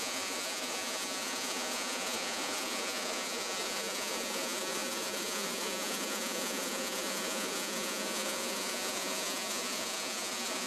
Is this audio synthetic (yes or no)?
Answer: yes